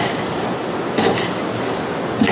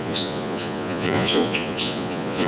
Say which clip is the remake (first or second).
second